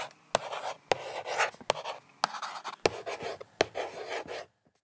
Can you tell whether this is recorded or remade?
recorded